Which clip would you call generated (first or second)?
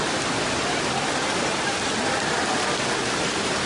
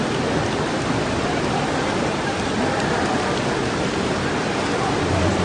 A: second